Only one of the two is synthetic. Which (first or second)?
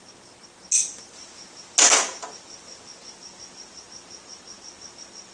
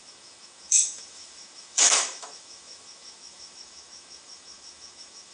second